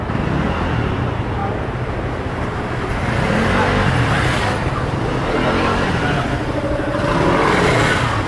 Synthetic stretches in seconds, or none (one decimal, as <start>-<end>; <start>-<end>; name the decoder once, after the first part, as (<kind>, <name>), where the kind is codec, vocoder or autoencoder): none